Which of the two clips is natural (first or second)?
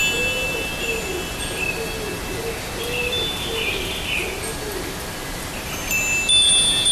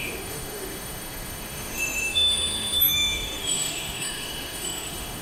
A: first